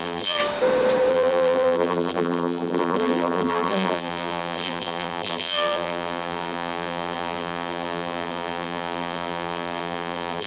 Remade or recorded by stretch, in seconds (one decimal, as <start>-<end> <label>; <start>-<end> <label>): 0.0-0.4 remade; 0.4-1.1 recorded; 1.1-10.5 remade